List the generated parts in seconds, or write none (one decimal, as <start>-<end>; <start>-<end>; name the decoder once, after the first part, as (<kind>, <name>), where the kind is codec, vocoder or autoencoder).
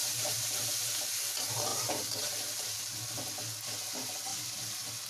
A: 0.0-1.1 (vocoder, BigVGAN v2); 1.7-2.8; 4.3-5.1